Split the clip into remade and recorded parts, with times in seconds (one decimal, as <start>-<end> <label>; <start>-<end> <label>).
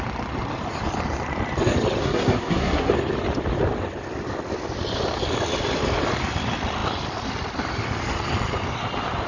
0.0-2.0 recorded; 2.0-2.9 remade; 2.9-9.3 recorded